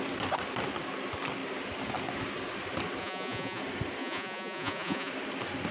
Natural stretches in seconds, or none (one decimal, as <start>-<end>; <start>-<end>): 0.0-3.0; 3.6-4.0; 5.1-5.7

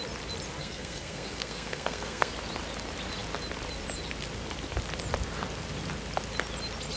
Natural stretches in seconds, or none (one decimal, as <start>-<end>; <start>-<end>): 0.0-0.6; 2.3-7.0

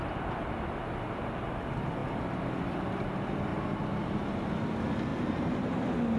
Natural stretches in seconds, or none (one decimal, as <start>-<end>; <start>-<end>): 0.0-3.5; 4.5-5.1; 5.8-6.2

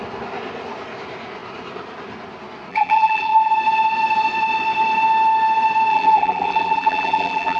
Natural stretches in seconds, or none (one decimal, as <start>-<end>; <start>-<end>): 0.0-2.7; 3.5-5.9

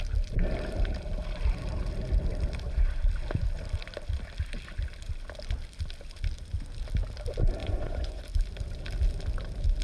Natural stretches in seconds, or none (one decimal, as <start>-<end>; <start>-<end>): 0.0-7.6; 8.2-9.8

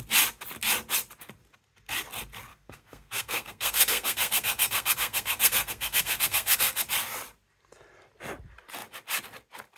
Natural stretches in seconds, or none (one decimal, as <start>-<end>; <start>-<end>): 0.0-2.5; 6.8-9.8